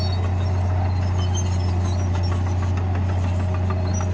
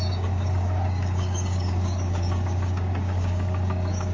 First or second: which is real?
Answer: first